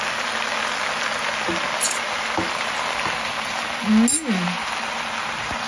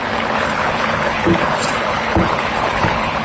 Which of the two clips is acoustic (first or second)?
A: first